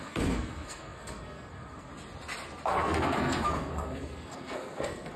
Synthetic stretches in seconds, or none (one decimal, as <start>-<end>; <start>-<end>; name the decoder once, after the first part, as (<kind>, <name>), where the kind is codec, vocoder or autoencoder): 0.0-1.9 (codec, SNAC); 2.7-5.2